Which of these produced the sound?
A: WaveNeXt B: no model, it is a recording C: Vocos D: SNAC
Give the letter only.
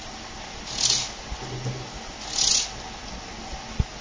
B